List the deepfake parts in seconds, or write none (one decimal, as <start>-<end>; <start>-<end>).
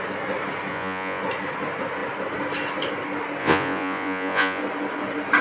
0.7-1.2; 3.4-4.6